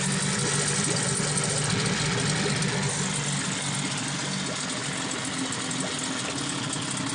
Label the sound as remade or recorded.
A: recorded